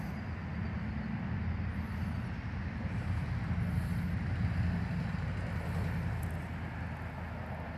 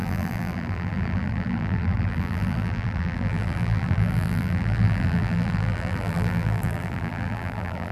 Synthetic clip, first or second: second